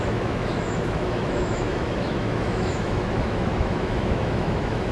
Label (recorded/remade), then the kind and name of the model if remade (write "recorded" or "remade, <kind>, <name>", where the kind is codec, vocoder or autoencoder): remade, autoencoder, DAC-VAE